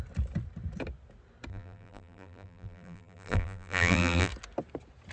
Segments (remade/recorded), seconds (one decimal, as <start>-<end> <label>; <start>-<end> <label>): 0.0-1.5 recorded; 1.5-4.3 remade; 4.3-5.1 recorded